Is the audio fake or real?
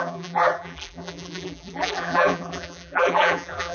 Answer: fake